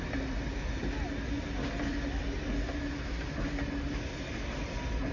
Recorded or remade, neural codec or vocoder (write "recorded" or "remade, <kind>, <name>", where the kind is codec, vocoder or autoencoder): recorded